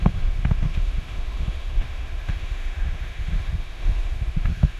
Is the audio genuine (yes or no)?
no